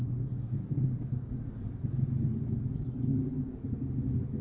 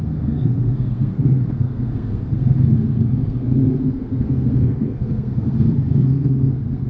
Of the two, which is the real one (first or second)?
first